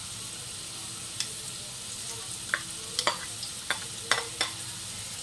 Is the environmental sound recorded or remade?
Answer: recorded